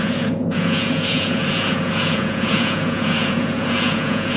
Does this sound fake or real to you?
fake